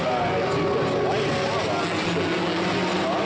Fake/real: real